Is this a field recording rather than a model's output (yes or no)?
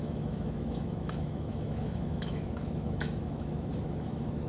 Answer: no